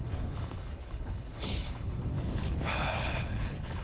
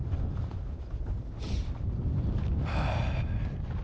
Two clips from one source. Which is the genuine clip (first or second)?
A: second